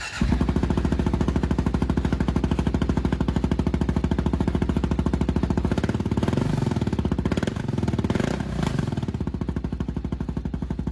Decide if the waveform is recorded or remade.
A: recorded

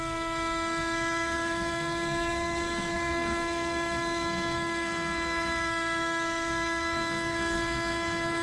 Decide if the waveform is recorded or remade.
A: remade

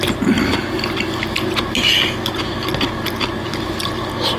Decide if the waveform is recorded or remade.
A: recorded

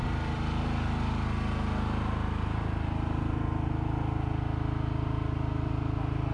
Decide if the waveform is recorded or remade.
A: recorded